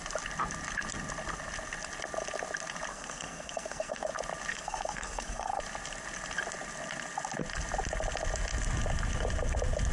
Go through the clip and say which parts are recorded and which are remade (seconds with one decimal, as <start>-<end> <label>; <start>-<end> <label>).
0.0-2.9 recorded; 2.9-4.1 remade; 4.1-4.5 recorded; 4.5-5.6 remade; 5.6-9.9 recorded